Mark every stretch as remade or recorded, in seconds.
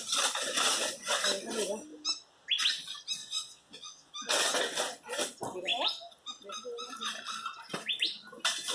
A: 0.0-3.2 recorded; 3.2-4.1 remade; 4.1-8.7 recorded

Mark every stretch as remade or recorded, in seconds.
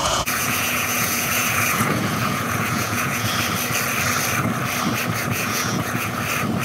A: 0.0-3.3 remade; 3.3-5.2 recorded; 5.2-6.1 remade; 6.1-6.6 recorded